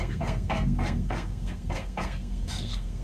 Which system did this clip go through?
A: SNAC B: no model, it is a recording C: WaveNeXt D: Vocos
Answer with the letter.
A